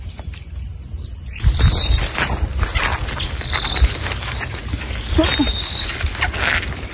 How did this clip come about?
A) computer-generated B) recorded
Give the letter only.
B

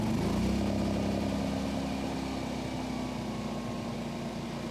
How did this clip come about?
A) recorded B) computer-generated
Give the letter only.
A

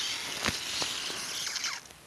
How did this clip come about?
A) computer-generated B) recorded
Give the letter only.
B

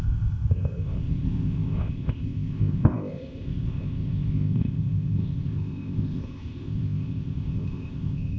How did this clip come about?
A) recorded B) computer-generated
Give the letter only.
B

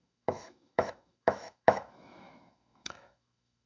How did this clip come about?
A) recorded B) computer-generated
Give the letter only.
B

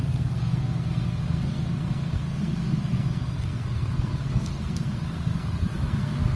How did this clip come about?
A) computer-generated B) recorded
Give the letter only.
A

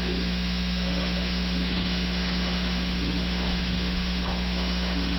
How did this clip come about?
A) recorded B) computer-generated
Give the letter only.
B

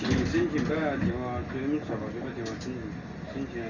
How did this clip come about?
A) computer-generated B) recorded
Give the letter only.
B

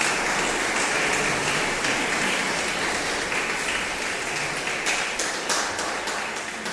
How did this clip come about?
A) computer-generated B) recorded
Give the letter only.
B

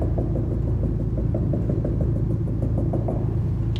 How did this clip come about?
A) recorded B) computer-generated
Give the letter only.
A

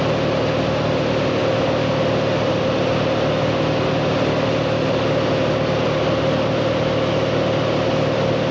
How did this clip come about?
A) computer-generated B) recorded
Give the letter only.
B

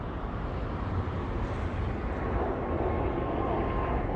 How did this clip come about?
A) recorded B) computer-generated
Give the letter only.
A